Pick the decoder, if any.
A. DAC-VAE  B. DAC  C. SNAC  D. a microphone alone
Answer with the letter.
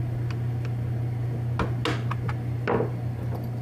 D